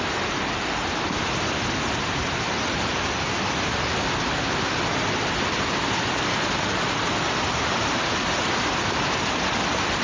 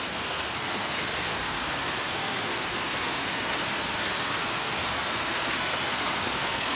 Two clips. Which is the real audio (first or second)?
first